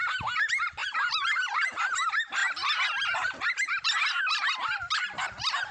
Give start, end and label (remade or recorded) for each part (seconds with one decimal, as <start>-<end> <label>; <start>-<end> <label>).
0.0-0.8 remade; 0.8-1.7 recorded; 1.7-2.4 remade; 2.4-4.2 recorded; 4.2-5.7 remade